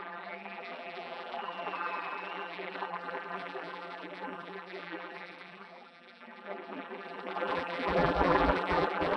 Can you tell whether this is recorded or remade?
remade